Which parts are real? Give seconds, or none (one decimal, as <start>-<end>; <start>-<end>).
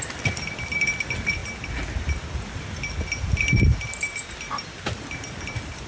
1.4-4.9